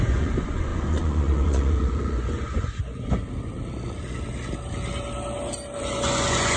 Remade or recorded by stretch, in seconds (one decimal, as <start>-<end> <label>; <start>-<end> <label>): 0.0-3.2 remade; 3.2-5.8 recorded; 5.8-6.6 remade